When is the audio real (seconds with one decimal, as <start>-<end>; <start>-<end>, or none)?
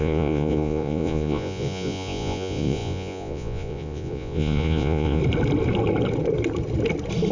5.2-7.3